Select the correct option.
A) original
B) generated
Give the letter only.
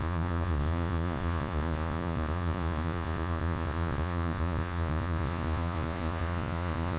B